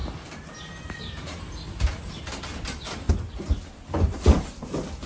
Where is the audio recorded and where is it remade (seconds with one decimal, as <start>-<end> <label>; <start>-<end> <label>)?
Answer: 0.0-5.1 recorded